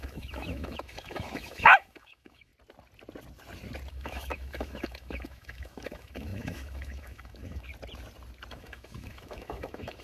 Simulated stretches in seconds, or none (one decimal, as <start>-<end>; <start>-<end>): 0.0-2.5; 3.9-7.7; 8.5-10.0